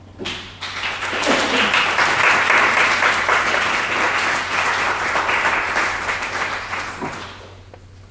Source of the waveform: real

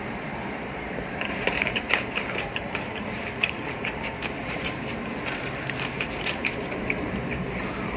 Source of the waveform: fake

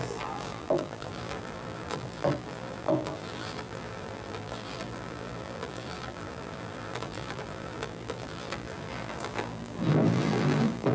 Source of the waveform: fake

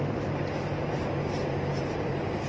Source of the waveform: fake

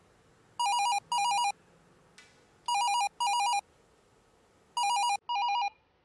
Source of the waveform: real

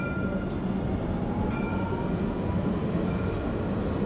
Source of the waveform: real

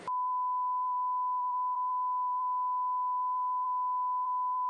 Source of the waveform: fake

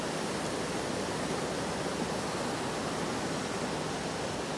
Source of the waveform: real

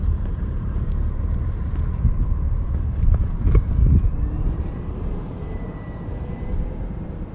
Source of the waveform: fake